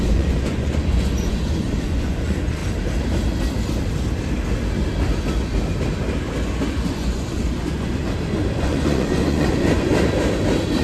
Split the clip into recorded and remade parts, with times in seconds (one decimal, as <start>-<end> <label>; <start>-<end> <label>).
0.0-2.6 remade; 2.6-6.7 recorded; 6.7-8.0 remade; 8.0-8.6 recorded; 8.6-9.9 remade; 9.9-10.8 recorded